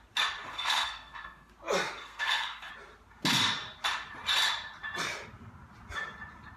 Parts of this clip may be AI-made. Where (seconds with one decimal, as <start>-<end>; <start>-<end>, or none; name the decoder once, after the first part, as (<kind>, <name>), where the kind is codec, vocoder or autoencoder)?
0.5-1.5 (codec, SNAC); 2.0-2.7